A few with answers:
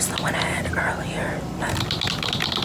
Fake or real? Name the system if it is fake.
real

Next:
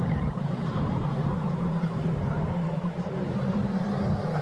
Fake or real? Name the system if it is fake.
fake, vocoder, BigVGAN v2